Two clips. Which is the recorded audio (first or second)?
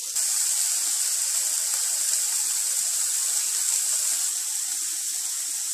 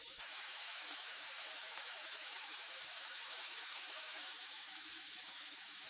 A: first